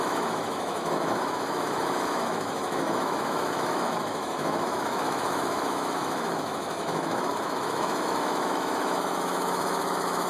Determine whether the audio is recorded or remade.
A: remade